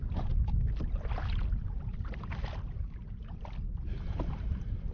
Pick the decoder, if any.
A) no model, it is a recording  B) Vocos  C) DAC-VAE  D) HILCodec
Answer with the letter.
A